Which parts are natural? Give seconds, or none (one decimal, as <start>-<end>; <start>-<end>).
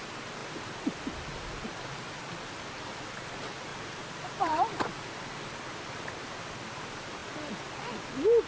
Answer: 0.0-3.7; 6.1-8.5